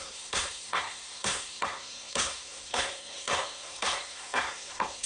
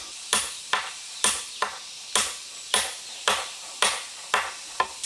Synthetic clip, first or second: first